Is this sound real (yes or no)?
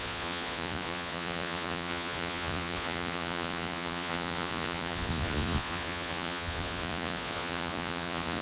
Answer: no